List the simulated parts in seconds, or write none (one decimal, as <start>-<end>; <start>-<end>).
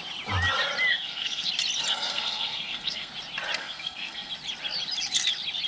0.9-1.5; 1.9-3.1; 3.6-4.3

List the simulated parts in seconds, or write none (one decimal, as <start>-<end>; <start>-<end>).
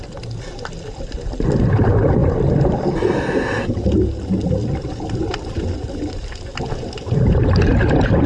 none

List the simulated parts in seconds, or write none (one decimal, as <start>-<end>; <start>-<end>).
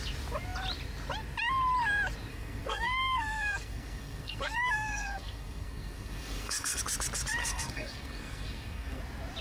2.3-6.8; 7.4-9.0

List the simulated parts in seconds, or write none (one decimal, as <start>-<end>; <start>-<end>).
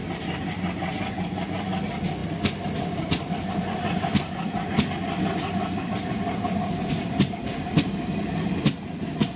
none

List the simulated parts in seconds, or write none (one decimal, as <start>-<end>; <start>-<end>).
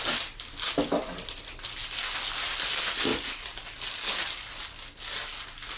none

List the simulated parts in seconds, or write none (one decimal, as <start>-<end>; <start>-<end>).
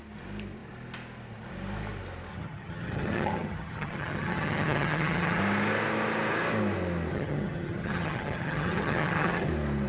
2.3-5.4; 7.1-9.5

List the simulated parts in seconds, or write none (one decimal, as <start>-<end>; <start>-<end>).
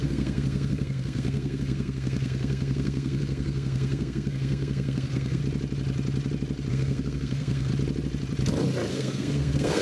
0.0-5.4; 6.7-7.7; 8.9-9.8